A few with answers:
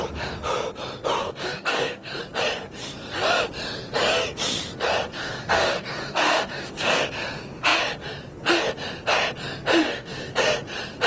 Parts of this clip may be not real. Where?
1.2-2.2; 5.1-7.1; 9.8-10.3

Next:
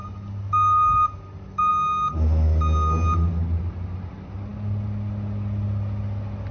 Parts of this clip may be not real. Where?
none

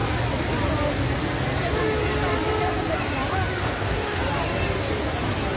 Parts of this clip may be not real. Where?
3.6-4.2